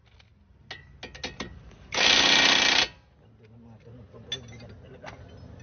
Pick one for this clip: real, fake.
real